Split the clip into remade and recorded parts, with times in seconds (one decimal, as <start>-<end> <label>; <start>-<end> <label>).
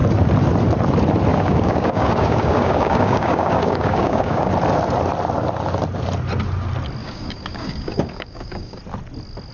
0.0-1.3 recorded; 1.3-4.5 remade; 4.5-7.0 recorded; 7.0-8.8 remade; 8.8-9.5 recorded